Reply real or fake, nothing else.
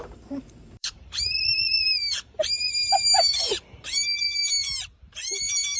fake